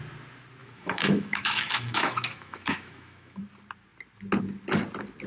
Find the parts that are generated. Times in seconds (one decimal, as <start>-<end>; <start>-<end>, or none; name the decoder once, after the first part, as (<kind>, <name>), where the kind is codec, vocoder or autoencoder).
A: 0.6-3.4 (autoencoder, DAC-VAE)